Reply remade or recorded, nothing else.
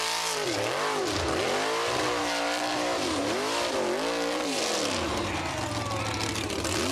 recorded